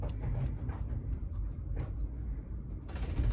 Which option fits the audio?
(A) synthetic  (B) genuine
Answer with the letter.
A